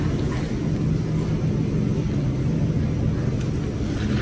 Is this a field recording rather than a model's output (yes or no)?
yes